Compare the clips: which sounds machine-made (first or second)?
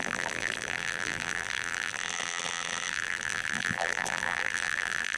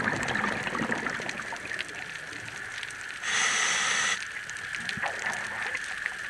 first